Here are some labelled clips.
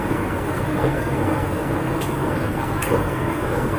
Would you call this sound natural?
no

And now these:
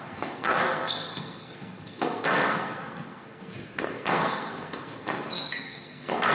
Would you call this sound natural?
no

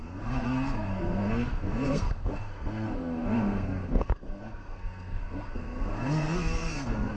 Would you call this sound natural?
no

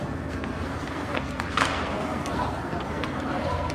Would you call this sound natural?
no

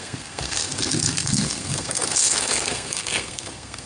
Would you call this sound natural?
no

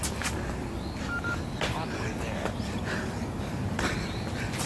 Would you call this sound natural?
yes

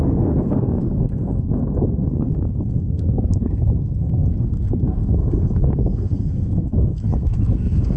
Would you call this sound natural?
no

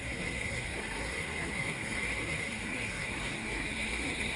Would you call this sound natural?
no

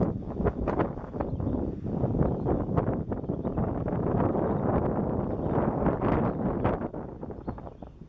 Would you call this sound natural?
yes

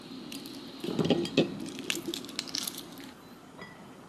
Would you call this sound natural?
yes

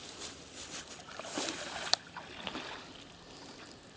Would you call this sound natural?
yes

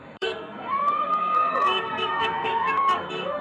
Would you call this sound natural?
no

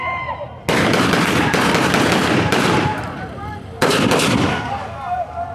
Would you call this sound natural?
yes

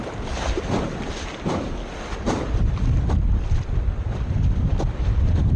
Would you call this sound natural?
yes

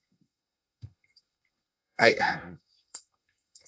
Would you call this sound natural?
no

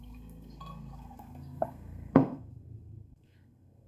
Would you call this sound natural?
no